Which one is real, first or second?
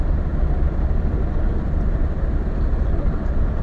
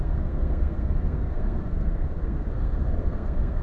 first